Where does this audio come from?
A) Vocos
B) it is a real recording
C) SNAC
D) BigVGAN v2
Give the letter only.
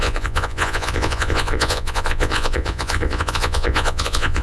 A